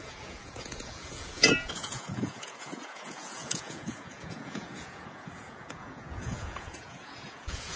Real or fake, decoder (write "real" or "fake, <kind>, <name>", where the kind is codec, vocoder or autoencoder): fake, vocoder, Vocos